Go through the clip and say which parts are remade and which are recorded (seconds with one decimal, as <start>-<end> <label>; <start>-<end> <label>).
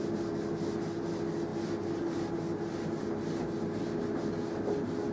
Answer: 0.0-5.1 recorded